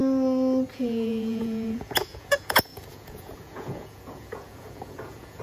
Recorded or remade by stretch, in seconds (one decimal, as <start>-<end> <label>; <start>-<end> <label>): 0.0-0.7 recorded; 0.7-5.4 remade